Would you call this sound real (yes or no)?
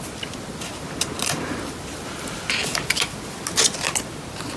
yes